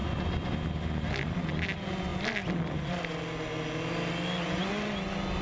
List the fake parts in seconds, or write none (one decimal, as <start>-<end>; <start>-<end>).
none